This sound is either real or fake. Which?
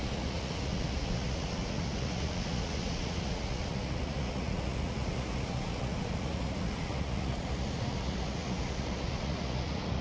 fake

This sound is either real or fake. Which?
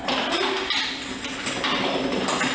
real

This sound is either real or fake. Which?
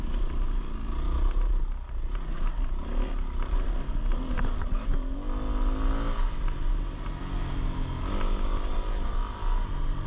real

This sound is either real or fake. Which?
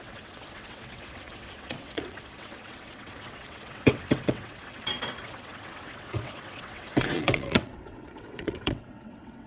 fake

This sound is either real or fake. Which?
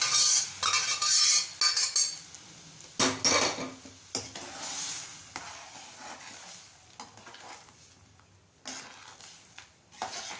real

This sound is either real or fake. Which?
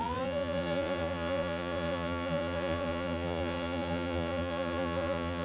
fake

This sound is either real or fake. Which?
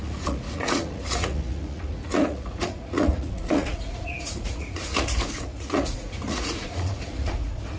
fake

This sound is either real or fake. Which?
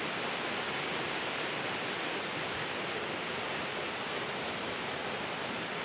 real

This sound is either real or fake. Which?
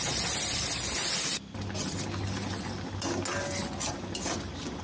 real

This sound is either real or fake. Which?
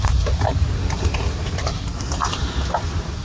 real